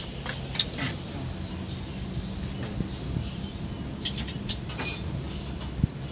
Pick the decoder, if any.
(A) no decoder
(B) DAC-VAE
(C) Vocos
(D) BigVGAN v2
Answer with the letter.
A